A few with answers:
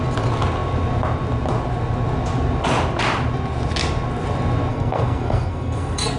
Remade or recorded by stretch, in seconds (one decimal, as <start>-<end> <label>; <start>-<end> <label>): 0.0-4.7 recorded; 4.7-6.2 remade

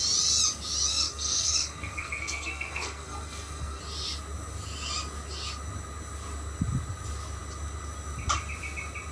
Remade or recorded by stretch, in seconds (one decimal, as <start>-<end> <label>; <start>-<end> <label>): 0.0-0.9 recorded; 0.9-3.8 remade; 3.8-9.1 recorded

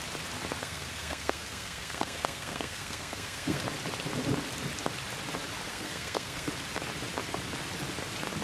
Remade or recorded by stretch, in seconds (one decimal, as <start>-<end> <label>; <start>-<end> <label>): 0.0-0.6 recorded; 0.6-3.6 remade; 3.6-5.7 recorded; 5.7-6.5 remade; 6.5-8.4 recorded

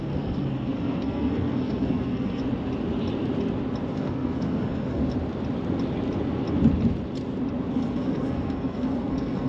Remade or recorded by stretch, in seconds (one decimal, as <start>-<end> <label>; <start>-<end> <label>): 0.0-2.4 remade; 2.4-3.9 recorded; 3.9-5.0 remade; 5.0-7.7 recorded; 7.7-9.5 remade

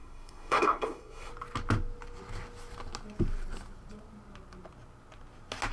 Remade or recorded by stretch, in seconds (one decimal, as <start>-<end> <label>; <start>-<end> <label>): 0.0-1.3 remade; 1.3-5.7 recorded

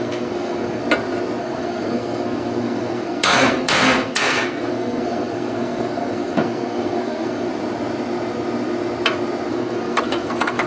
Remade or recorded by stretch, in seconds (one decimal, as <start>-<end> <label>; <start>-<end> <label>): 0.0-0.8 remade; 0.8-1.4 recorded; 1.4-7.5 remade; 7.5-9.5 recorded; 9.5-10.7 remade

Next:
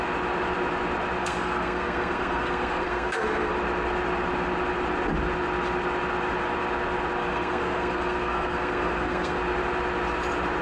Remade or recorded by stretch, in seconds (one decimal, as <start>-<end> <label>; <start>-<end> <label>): 0.0-1.2 recorded; 1.2-3.5 remade; 3.5-7.2 recorded; 7.2-9.4 remade; 9.4-10.6 recorded

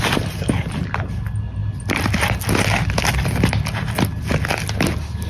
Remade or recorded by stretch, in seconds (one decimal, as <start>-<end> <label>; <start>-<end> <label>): 0.0-5.3 recorded